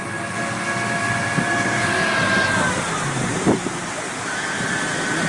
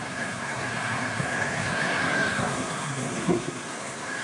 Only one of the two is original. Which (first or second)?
first